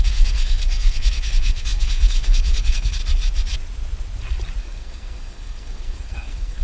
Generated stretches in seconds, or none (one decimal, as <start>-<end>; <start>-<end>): 0.0-3.0; 4.6-6.6

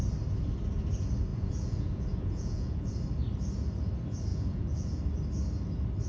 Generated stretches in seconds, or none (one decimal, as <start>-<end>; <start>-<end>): 1.3-2.9; 4.3-5.0

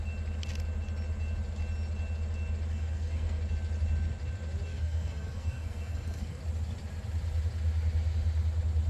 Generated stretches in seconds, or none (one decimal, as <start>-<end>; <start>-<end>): 2.7-3.4; 4.7-6.4

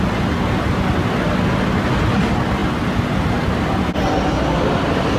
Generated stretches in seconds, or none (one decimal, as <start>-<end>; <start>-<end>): none

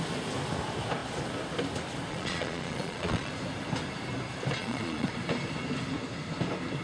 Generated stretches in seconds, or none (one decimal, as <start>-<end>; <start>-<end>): 2.1-3.3; 4.6-5.1

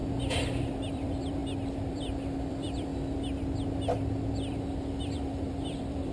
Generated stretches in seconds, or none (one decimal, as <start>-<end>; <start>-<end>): 0.6-1.4; 1.9-2.9; 4.5-6.1

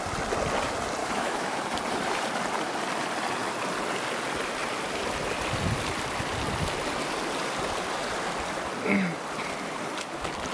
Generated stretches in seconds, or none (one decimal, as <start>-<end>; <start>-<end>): 1.0-1.6

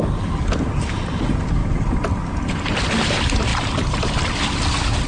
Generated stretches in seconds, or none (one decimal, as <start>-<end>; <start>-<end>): 1.6-2.2